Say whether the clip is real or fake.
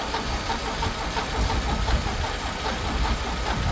real